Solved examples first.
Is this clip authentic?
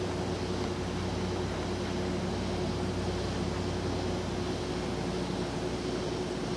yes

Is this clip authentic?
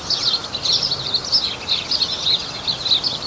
yes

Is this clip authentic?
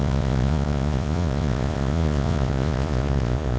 no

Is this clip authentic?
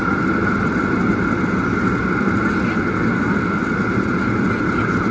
yes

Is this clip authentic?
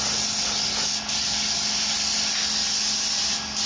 yes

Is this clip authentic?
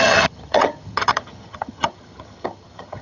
no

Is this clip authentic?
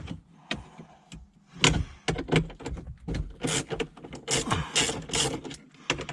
yes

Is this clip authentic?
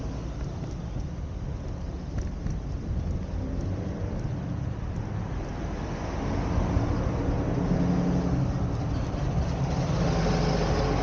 yes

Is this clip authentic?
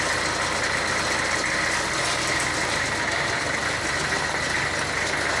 yes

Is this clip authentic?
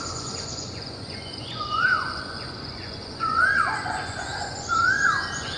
no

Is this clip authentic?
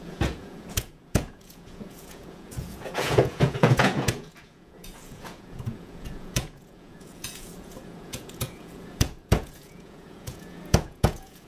no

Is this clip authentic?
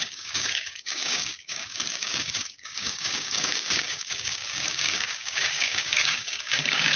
no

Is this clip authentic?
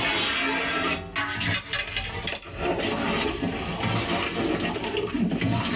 yes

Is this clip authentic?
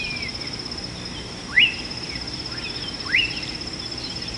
yes